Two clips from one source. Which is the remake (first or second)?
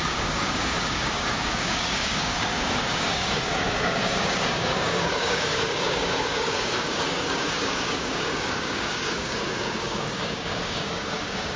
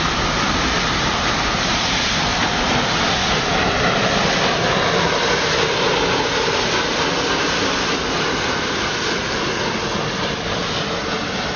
first